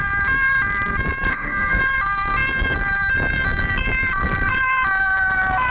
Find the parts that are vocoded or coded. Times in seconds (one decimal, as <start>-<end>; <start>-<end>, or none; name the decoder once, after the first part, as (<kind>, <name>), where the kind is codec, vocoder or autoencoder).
1.3-1.8 (codec, SNAC)